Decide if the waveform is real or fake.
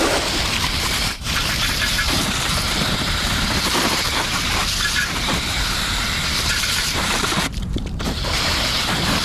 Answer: fake